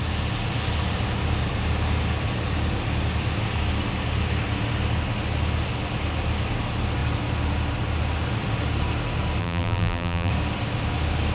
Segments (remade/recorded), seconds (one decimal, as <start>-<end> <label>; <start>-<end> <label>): 0.0-9.4 recorded; 9.4-10.3 remade; 10.3-11.3 recorded